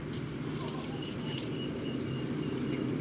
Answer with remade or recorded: recorded